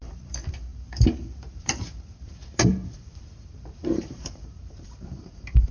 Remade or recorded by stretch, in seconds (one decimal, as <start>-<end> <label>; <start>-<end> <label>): 0.0-5.7 remade